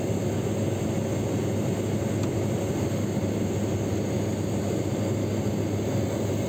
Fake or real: real